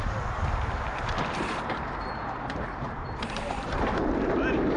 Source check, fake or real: fake